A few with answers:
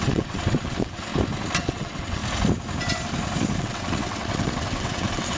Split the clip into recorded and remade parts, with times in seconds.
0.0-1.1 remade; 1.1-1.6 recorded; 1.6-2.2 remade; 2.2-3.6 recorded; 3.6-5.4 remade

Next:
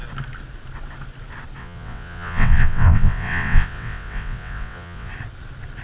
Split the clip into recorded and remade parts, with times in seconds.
0.0-1.6 recorded; 1.6-5.1 remade; 5.1-5.8 recorded

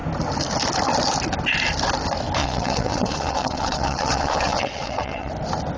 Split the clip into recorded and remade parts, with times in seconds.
0.0-2.4 recorded; 2.4-5.3 remade; 5.3-5.8 recorded

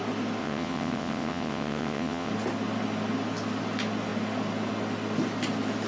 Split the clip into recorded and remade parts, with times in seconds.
0.0-0.4 recorded; 0.4-2.3 remade; 2.3-5.9 recorded

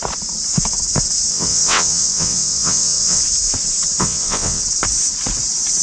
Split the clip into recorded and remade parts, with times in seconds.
0.0-1.3 recorded; 1.3-3.2 remade; 3.2-4.0 recorded; 4.0-4.6 remade; 4.6-5.8 recorded

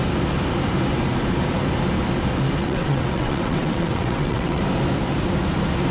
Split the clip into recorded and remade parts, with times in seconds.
0.0-2.6 recorded; 2.6-4.6 remade; 4.6-5.9 recorded